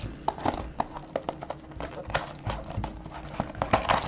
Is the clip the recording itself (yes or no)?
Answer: yes